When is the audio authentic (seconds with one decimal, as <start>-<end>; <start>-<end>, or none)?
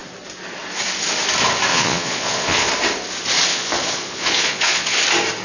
0.0-1.7; 2.7-3.5; 5.0-5.4